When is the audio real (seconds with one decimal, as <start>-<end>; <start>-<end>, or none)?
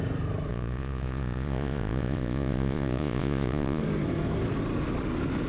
0.0-0.5; 3.8-5.5